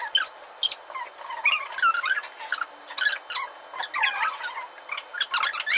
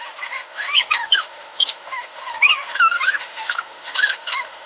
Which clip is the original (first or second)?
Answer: first